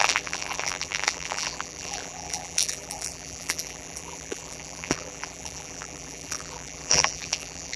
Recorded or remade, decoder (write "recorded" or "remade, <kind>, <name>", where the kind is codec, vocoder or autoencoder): remade, vocoder, BigVGAN v2